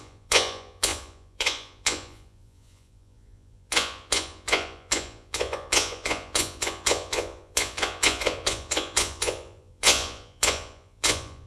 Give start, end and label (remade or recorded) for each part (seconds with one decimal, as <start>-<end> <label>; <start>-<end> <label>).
0.0-11.5 remade